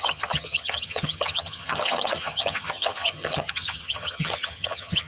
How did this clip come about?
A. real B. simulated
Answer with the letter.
B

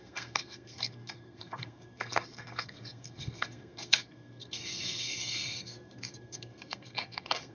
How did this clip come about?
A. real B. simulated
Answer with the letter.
B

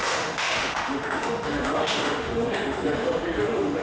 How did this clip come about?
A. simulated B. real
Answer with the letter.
A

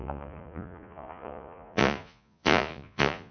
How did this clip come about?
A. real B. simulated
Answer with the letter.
B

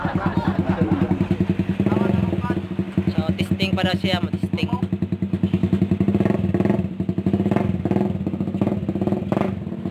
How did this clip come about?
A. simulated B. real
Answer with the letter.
B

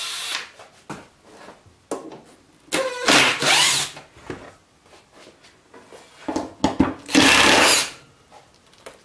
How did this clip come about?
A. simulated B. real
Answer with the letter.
B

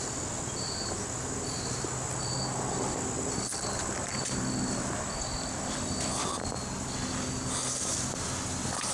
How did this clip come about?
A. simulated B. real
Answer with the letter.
B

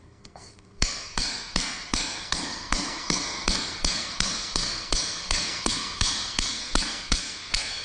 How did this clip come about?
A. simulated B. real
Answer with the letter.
A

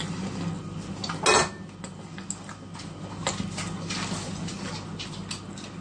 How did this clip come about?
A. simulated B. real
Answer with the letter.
B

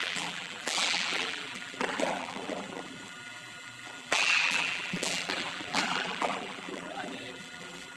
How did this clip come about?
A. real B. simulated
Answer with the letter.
B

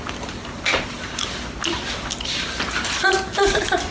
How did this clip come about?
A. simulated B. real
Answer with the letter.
B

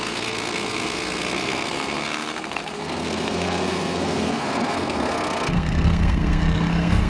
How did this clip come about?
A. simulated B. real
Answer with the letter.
A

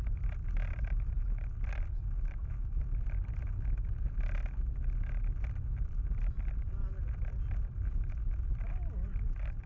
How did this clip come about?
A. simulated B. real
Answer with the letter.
B